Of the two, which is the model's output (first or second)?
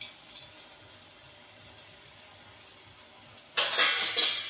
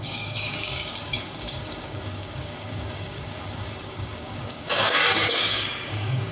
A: second